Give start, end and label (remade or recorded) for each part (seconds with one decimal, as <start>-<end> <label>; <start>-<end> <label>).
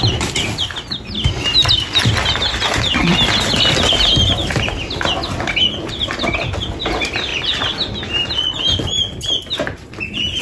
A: 0.0-10.4 recorded